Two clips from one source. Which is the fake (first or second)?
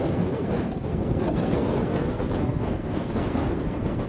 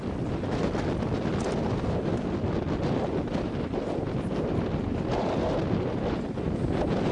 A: first